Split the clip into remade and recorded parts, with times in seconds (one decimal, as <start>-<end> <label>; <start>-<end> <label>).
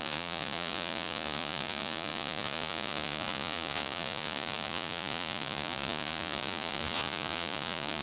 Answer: 0.0-8.0 remade